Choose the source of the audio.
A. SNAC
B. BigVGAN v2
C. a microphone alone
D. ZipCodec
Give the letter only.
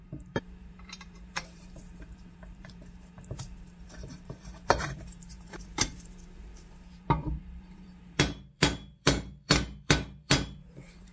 B